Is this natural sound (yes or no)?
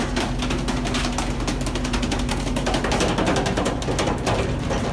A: yes